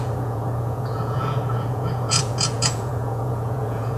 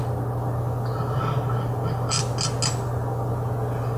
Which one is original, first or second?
second